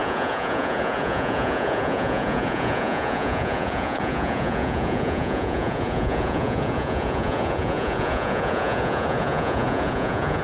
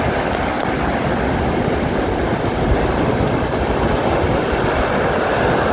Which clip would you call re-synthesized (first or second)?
first